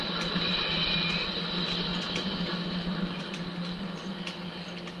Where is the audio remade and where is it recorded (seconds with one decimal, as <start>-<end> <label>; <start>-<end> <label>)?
0.0-5.0 recorded